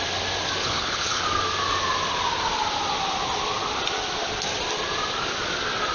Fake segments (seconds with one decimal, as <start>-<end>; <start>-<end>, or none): 0.6-1.2